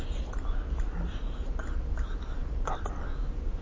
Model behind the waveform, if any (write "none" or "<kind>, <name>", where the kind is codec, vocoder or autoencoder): none